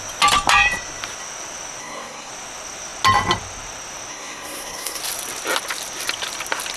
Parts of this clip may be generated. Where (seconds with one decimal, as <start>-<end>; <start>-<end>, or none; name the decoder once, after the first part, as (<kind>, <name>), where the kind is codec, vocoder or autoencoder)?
1.8-2.3 (codec, SNAC); 4.1-5.0